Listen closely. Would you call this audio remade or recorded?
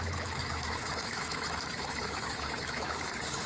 remade